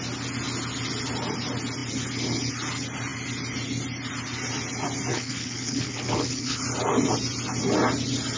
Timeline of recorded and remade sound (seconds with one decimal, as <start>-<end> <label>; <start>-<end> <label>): 0.0-5.1 recorded; 5.1-6.6 remade; 6.6-8.4 recorded